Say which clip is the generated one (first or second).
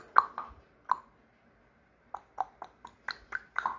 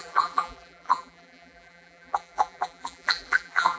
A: second